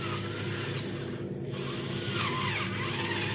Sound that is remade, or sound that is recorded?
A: recorded